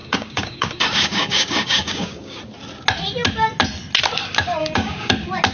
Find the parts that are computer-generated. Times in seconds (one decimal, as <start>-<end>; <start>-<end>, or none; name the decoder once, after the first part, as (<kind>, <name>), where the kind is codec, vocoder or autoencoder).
0.0-2.4 (codec, DAC); 4.6-5.1